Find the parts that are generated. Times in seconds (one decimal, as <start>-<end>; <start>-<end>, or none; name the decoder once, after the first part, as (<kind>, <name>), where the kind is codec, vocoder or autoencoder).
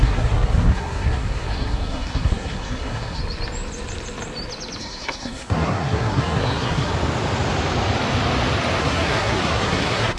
0.0-3.2 (codec, SNAC); 4.8-6.9; 8.8-10.2